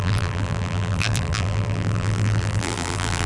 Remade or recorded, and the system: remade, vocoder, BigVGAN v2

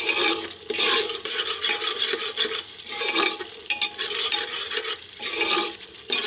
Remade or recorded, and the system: remade, vocoder, BigVGAN v2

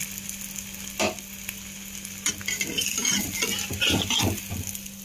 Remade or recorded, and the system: recorded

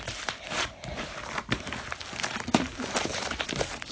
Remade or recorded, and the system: recorded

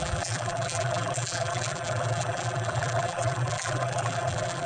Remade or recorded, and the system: remade, vocoder, BigVGAN v2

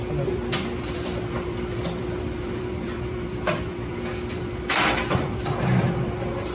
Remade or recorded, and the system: remade, vocoder, BigVGAN v2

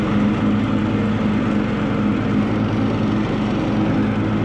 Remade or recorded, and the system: recorded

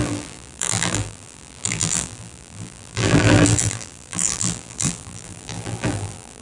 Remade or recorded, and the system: remade, vocoder, BigVGAN v2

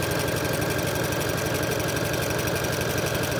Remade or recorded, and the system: recorded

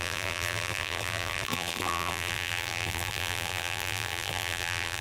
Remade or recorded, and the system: remade, vocoder, BigVGAN v2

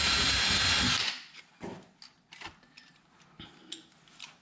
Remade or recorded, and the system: recorded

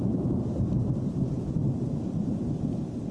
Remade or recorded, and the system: remade, vocoder, BigVGAN v2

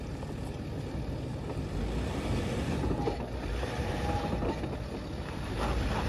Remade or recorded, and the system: recorded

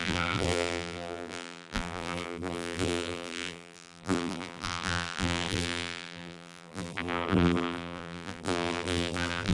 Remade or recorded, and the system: remade, vocoder, BigVGAN v2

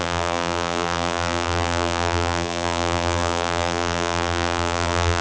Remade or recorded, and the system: remade, vocoder, BigVGAN v2